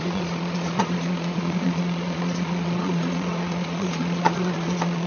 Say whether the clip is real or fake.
fake